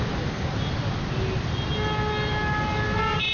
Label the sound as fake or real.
real